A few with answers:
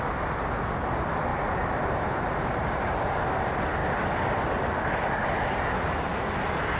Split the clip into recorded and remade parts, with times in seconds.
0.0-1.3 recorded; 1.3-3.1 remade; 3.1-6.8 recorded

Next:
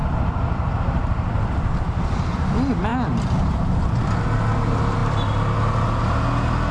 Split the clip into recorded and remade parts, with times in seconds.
0.0-6.7 recorded